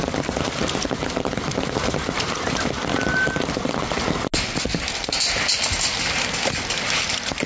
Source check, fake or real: real